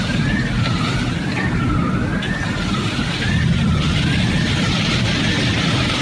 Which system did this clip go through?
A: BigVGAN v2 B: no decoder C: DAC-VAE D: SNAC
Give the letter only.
B